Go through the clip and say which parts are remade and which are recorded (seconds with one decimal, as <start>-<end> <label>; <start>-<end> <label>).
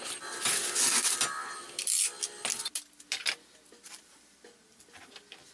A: 0.0-5.5 recorded